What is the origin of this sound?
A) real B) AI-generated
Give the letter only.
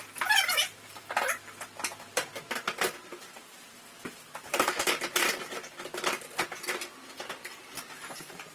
B